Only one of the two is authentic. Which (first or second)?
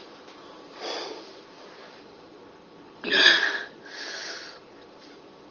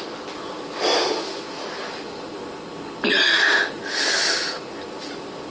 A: second